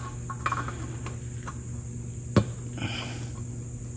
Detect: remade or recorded recorded